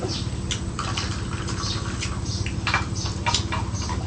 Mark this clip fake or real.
real